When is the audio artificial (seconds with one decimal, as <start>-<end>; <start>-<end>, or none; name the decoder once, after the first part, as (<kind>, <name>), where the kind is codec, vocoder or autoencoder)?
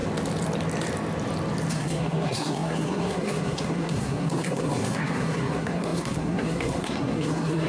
1.7-7.7 (codec, SNAC)